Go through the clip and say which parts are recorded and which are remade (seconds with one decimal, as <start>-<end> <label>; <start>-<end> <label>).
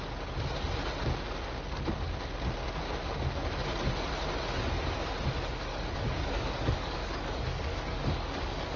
0.0-5.7 recorded; 5.7-8.8 remade